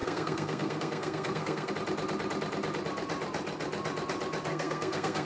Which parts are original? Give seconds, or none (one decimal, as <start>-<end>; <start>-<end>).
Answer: 1.7-4.5